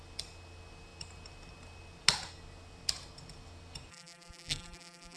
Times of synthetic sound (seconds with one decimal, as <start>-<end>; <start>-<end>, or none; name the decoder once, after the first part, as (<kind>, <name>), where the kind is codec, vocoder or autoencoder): 3.9-5.2 (vocoder, BigVGAN v2)